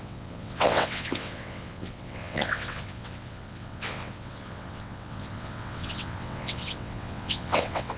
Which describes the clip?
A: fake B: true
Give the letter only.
A